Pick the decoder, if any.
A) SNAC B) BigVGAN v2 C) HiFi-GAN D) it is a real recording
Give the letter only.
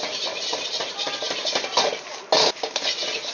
D